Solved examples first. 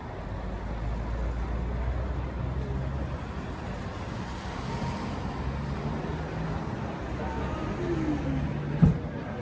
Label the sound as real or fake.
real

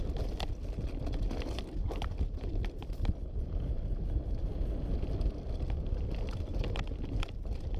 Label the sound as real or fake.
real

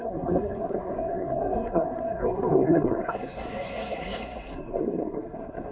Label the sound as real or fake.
fake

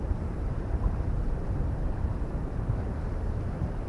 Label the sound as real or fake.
fake